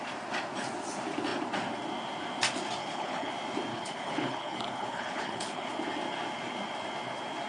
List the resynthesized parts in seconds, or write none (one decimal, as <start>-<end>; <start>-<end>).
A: 2.8-3.3; 3.7-5.7